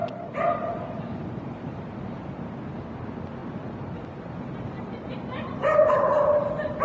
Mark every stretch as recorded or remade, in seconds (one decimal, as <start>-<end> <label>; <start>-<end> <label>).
0.0-2.0 remade; 2.0-3.4 recorded; 3.4-6.8 remade